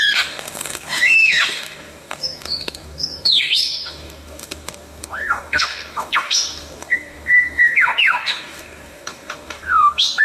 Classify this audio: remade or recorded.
remade